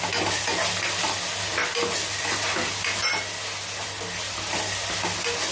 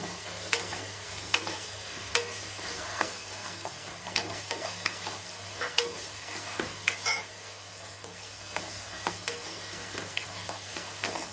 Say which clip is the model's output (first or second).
second